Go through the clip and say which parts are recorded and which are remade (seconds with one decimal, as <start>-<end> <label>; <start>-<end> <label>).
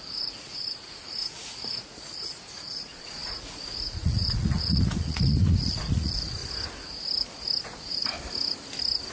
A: 0.0-6.4 remade; 6.4-7.6 recorded; 7.6-8.0 remade; 8.0-9.1 recorded